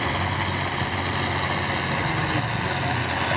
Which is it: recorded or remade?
recorded